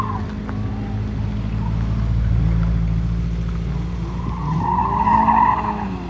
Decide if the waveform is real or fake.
real